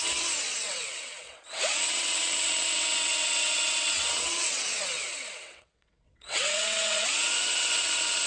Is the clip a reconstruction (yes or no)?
yes